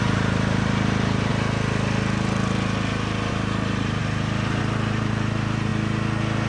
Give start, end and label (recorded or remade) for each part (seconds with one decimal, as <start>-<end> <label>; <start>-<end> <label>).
0.0-1.3 remade; 1.3-3.3 recorded; 3.3-5.7 remade; 5.7-6.5 recorded